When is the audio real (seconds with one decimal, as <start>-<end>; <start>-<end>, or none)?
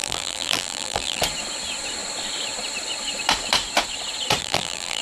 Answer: 1.2-4.4